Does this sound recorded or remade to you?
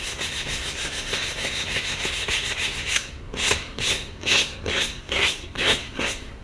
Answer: remade